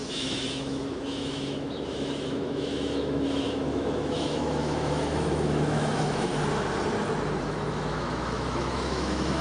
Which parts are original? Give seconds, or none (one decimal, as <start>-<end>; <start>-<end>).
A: 6.3-7.4

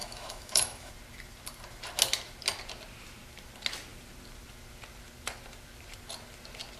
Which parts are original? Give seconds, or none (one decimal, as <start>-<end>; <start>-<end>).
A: 0.9-6.8

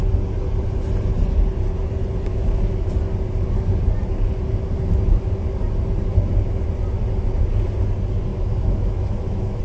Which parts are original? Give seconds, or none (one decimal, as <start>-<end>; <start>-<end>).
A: 0.0-2.3; 2.9-8.3

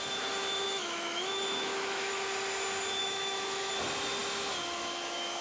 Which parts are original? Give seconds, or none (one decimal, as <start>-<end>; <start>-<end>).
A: 0.0-0.8; 2.1-3.0; 3.7-5.4

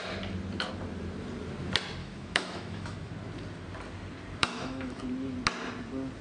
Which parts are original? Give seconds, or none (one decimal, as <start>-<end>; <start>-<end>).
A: 0.0-2.0; 3.1-4.4; 5.0-6.2

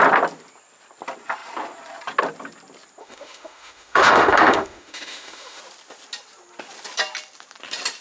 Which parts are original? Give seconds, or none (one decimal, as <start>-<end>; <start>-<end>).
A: 0.0-3.0; 5.6-8.0

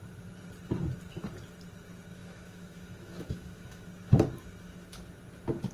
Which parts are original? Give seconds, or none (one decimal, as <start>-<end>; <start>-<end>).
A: 0.0-2.2; 3.9-5.7

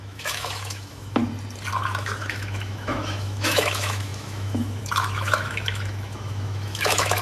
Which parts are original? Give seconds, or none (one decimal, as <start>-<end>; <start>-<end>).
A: 1.2-1.7